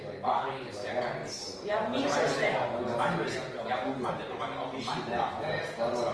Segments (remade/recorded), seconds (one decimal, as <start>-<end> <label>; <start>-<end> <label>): 0.0-6.1 recorded